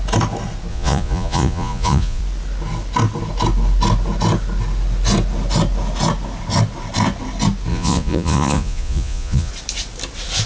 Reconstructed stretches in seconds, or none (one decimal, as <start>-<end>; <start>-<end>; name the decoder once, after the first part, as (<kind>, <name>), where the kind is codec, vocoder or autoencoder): 0.7-2.2 (vocoder, Vocos); 7.7-9.5